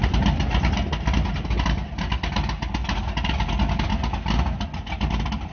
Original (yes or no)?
yes